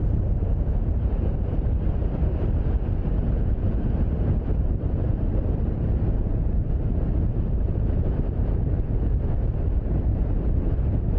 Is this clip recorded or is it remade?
remade